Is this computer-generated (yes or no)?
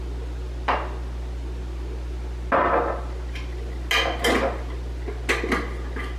no